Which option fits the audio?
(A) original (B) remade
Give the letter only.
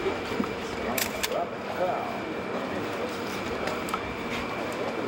B